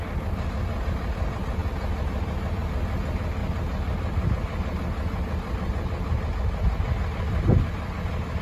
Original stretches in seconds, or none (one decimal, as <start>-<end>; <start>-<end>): 0.0-8.4